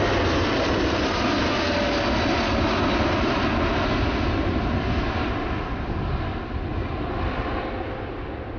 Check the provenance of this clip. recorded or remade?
recorded